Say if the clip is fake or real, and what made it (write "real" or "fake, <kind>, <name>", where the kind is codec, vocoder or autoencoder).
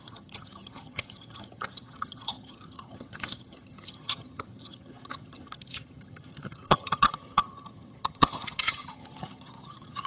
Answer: fake, vocoder, HiFi-GAN